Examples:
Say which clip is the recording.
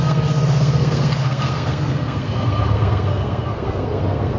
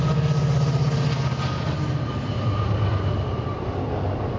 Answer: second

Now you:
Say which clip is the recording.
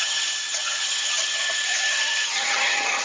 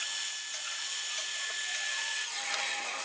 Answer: second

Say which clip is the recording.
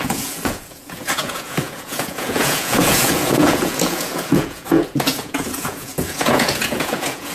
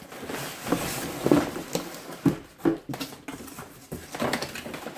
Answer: second